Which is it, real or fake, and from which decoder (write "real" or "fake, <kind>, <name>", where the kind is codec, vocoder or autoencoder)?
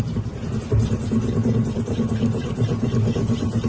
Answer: real